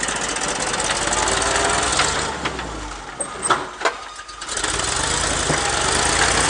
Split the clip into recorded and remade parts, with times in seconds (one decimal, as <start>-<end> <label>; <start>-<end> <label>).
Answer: 0.0-6.5 recorded

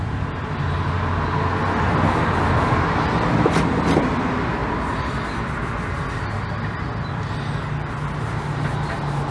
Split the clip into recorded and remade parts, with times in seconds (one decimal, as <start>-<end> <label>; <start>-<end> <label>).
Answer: 0.0-9.3 recorded

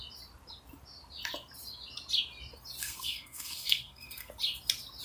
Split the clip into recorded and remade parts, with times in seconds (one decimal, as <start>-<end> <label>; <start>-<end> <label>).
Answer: 0.0-2.8 recorded; 2.8-4.3 remade; 4.3-5.0 recorded

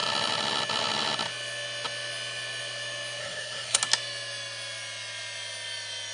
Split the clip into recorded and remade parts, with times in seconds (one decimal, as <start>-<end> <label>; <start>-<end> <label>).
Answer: 0.0-3.2 recorded; 3.2-3.8 remade; 3.8-6.1 recorded

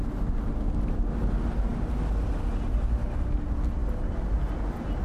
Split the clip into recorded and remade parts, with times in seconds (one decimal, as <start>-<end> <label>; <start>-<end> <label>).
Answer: 0.0-5.0 recorded

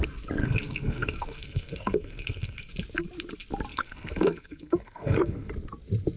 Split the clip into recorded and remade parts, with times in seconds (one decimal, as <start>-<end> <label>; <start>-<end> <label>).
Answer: 0.0-0.4 recorded; 0.4-2.7 remade; 2.7-3.7 recorded; 3.7-5.5 remade; 5.5-6.2 recorded

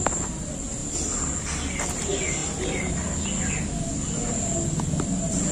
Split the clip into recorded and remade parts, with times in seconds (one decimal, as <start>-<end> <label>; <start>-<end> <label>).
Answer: 0.0-5.5 recorded

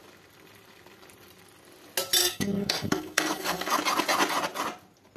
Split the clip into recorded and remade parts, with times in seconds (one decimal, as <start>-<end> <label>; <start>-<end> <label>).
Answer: 0.0-2.2 recorded; 2.2-3.8 remade; 3.8-5.2 recorded